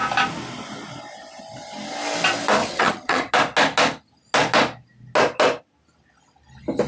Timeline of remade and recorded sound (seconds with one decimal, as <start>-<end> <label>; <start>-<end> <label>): 0.0-2.6 recorded; 2.6-3.3 remade; 3.3-6.9 recorded